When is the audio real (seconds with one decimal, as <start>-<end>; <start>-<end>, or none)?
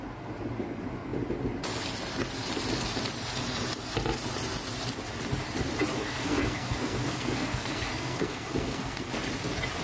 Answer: 0.0-5.9; 9.1-9.8